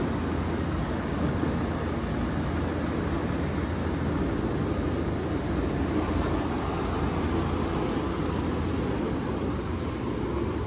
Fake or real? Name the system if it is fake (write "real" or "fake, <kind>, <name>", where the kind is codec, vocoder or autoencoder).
real